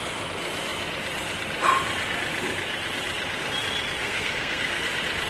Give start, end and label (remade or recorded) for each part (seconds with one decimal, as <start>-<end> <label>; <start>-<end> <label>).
0.0-4.0 recorded; 4.0-4.8 remade; 4.8-5.3 recorded